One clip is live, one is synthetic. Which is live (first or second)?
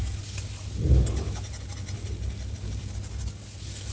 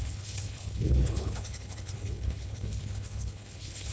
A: first